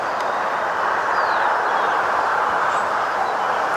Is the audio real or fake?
real